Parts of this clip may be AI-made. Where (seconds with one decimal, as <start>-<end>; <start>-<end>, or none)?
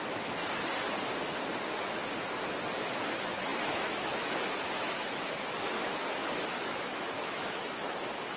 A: 0.0-0.4; 2.8-8.4